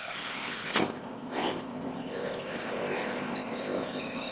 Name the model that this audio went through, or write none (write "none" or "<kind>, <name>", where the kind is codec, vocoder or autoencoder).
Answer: codec, ZipCodec